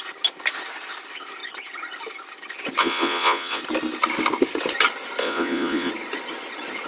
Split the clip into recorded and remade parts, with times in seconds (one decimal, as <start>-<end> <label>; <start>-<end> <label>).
0.0-2.8 recorded; 2.8-3.6 remade; 3.6-5.2 recorded; 5.2-5.9 remade; 5.9-6.9 recorded